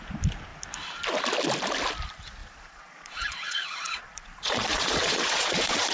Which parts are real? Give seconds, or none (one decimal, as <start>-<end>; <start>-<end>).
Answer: 0.0-2.4